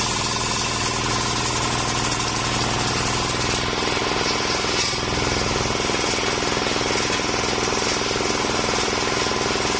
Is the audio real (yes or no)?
yes